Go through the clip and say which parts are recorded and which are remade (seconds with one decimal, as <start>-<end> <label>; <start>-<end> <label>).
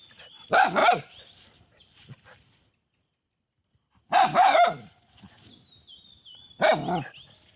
0.0-0.8 recorded; 0.8-5.2 remade; 5.2-7.6 recorded